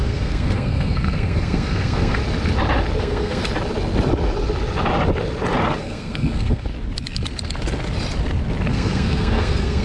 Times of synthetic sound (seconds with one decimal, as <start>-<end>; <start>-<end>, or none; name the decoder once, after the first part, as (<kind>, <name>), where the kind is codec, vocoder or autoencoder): 0.0-2.2 (codec, SNAC); 3.0-3.4; 5.8-6.7; 8.7-9.8

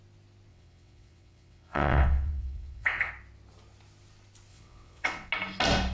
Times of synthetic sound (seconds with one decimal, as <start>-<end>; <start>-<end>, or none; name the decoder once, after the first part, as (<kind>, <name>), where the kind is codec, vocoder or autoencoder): 0.5-3.1 (vocoder, WaveNeXt); 4.5-5.3

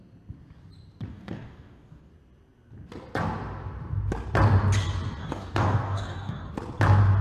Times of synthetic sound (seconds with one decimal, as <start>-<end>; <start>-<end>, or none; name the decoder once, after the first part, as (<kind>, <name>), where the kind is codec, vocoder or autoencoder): 1.1-2.1 (codec, DAC); 5.2-6.5

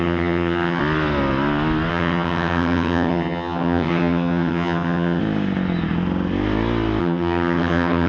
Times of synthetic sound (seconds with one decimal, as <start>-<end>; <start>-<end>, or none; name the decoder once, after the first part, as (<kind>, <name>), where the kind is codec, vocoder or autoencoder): 0.0-0.8 (vocoder, HiFi-GAN); 1.9-5.2; 7.0-8.1